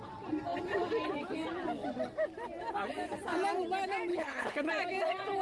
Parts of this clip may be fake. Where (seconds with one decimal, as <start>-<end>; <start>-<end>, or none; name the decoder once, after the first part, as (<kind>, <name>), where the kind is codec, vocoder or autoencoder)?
4.1-4.7 (codec, HILCodec)